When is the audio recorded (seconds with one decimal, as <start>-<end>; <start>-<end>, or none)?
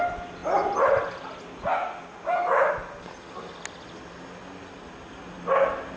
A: 0.0-6.0